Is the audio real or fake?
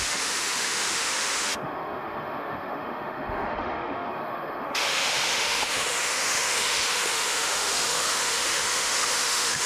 fake